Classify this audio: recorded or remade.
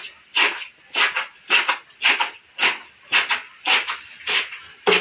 recorded